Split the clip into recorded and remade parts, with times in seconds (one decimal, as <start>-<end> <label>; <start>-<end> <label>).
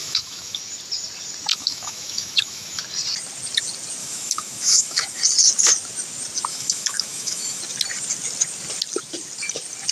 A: 0.0-0.6 remade; 0.6-1.5 recorded; 1.5-2.8 remade; 2.8-4.0 recorded; 4.0-5.2 remade; 5.2-6.5 recorded; 6.5-7.6 remade; 7.6-9.9 recorded